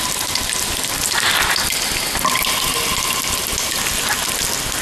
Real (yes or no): yes